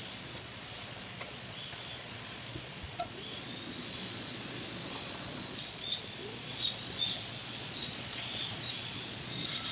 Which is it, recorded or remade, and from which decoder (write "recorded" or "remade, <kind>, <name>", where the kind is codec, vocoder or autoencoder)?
remade, vocoder, Vocos